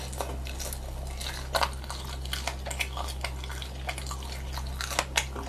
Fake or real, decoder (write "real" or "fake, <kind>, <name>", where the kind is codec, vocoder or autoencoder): real